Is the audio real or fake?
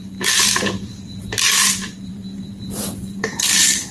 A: fake